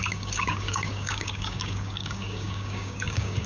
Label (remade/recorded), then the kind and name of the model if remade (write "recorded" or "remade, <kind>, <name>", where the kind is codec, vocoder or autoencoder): remade, codec, DAC